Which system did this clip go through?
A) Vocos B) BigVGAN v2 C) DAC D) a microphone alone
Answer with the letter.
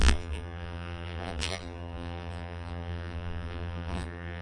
B